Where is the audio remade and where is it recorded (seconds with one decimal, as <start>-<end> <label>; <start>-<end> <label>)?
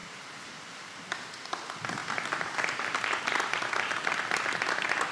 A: 0.0-5.1 recorded